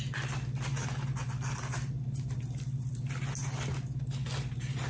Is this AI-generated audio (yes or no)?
no